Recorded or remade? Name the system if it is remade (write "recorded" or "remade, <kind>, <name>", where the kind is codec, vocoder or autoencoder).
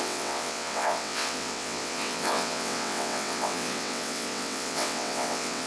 remade, vocoder, WaveNeXt